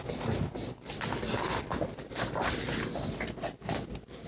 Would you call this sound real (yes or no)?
yes